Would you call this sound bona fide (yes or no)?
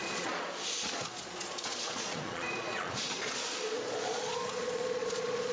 no